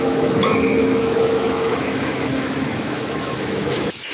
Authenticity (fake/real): fake